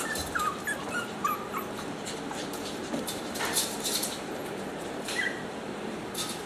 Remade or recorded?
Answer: remade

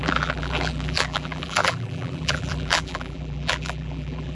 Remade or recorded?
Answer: remade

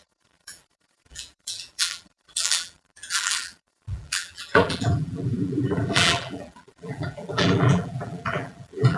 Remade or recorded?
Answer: remade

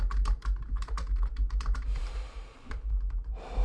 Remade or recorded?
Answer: remade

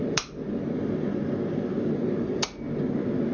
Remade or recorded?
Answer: recorded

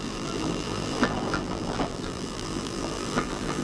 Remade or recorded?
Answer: remade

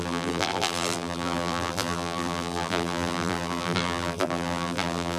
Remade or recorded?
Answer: remade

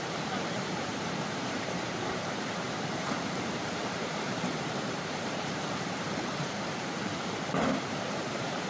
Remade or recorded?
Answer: remade